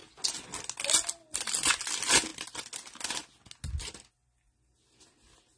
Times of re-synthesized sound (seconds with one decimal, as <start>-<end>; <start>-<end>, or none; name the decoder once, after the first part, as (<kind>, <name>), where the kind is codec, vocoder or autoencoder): none